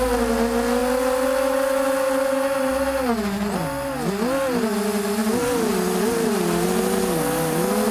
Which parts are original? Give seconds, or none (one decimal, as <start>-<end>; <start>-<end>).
0.0-7.9